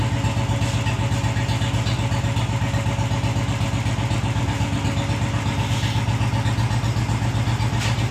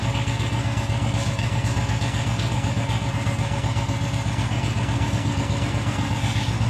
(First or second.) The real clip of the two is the first